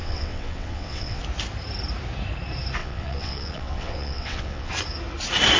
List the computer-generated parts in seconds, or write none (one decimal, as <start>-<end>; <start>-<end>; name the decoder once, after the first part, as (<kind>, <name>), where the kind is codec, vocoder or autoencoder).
0.0-1.2 (vocoder, WaveNeXt); 2.8-4.7